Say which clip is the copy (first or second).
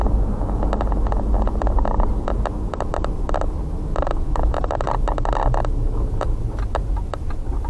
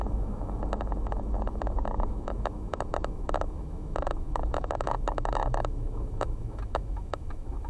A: second